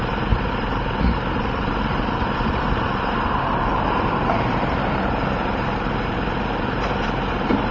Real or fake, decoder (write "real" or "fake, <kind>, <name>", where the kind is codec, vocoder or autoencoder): fake, vocoder, BigVGAN v2